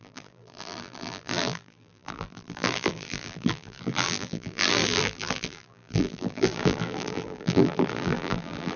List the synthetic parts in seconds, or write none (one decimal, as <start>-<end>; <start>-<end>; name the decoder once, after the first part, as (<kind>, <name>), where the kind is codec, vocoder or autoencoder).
0.0-8.8 (vocoder, BigVGAN v2)